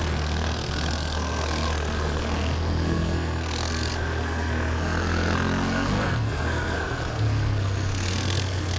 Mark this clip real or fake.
fake